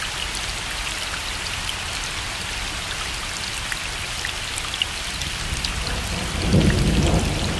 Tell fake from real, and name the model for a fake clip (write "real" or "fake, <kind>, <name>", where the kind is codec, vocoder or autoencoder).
real